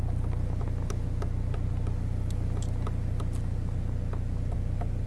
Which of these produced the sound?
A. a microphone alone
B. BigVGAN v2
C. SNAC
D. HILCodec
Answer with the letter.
A